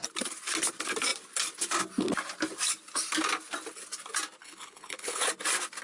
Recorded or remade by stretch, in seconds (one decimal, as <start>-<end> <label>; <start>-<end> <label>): 0.0-4.4 recorded; 4.4-5.2 remade; 5.2-5.8 recorded